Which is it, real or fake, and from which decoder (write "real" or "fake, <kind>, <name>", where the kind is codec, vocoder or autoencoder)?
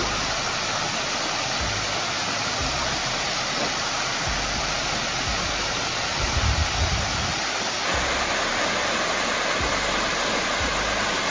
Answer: real